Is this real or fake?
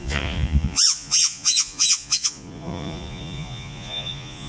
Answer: fake